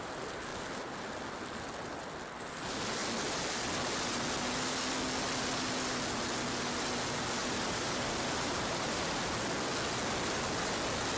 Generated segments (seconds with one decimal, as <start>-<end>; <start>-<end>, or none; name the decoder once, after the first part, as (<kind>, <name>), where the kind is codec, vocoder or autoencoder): 7.4-9.0 (vocoder, BigVGAN v2)